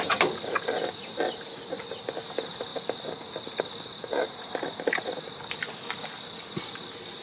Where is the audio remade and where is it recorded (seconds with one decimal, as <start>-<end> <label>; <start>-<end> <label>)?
0.0-7.2 recorded